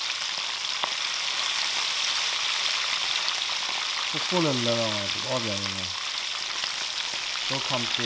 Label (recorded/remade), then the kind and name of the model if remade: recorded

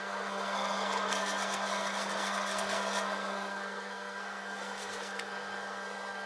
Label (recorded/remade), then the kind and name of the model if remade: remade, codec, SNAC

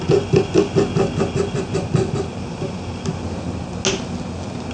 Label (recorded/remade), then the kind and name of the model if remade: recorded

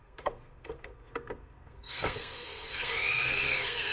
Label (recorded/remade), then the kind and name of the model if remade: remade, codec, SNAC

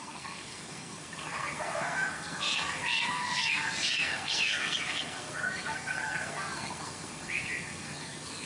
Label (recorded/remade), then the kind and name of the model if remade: remade, codec, SNAC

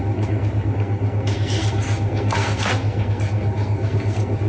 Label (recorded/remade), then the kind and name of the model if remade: remade, codec, SNAC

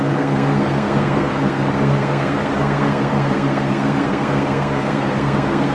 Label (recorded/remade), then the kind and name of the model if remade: remade, codec, SNAC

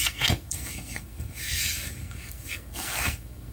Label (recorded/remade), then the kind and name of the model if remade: remade, codec, SNAC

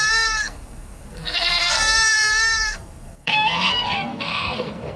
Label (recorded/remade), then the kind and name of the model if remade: remade, codec, SNAC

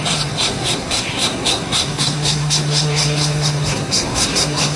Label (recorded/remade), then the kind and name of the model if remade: remade, codec, SNAC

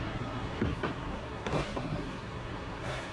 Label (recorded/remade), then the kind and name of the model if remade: remade, codec, SNAC